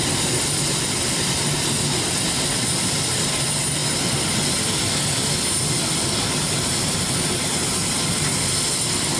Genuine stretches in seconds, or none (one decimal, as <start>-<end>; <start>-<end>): 0.0-9.2